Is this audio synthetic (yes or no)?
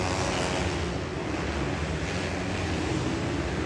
no